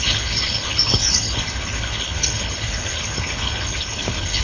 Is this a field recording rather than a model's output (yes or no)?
no